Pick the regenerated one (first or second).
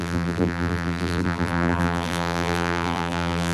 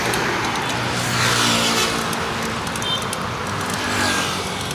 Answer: first